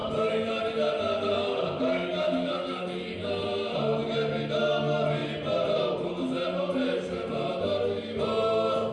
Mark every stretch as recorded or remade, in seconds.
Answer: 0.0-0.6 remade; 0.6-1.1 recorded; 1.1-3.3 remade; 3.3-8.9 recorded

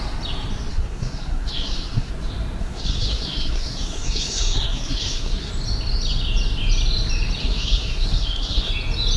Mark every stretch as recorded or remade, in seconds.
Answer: 0.0-0.7 recorded; 0.7-2.1 remade; 2.1-2.6 recorded; 2.6-5.5 remade; 5.5-7.4 recorded; 7.4-8.7 remade; 8.7-9.2 recorded

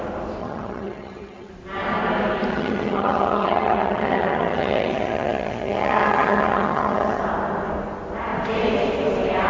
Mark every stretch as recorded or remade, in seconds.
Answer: 0.0-0.4 recorded; 0.4-1.5 remade; 1.5-2.5 recorded; 2.5-7.2 remade; 7.2-9.5 recorded

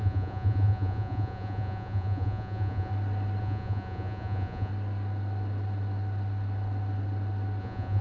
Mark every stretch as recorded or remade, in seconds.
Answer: 0.0-2.9 remade; 2.9-3.4 recorded; 3.4-4.7 remade; 4.7-7.6 recorded; 7.6-8.0 remade